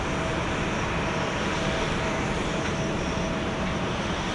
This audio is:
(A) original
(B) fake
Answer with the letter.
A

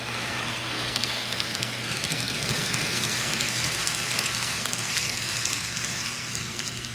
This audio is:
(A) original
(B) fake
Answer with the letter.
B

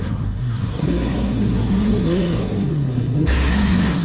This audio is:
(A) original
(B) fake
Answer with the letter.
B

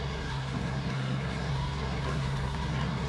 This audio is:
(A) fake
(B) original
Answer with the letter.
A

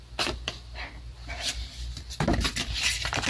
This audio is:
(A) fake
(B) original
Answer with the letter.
B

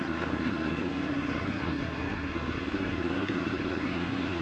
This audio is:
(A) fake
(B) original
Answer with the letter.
A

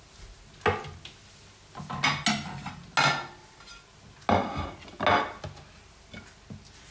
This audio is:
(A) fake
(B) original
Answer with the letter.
B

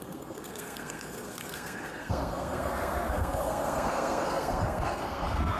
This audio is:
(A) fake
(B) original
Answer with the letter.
A